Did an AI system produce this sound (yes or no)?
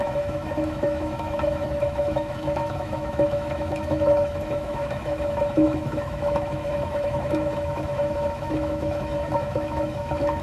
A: yes